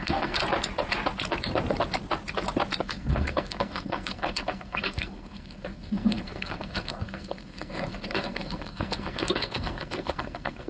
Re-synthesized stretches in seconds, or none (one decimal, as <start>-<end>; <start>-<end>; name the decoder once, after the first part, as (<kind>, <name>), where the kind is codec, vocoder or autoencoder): 0.0-0.4 (codec, SNAC); 2.8-10.7